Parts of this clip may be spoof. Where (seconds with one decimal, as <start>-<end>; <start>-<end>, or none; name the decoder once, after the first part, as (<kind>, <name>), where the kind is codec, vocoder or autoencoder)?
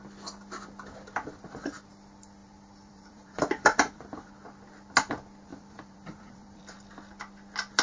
2.4-4.3 (vocoder, BigVGAN v2); 5.5-6.9